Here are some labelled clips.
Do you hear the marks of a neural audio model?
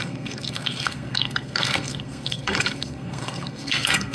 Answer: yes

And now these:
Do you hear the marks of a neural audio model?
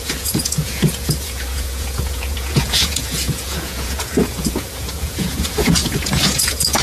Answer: yes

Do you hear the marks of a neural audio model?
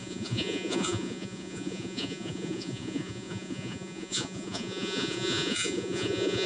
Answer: yes